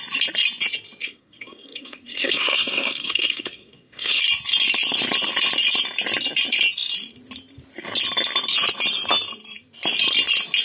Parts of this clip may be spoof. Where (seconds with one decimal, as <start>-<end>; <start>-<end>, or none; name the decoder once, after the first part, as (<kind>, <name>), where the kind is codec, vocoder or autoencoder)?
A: 1.0-4.2 (codec, SNAC)